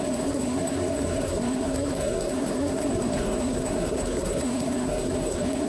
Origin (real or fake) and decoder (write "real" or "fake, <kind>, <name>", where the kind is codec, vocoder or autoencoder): fake, codec, SNAC